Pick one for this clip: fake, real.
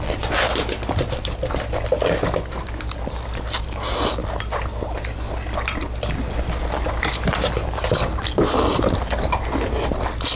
real